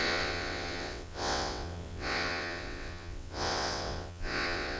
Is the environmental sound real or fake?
fake